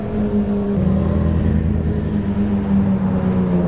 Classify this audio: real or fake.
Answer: real